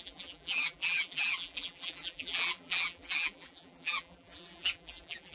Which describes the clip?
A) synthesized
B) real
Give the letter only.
A